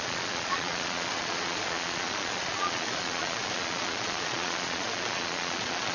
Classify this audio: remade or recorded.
remade